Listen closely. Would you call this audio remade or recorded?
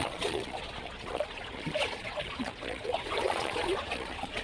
remade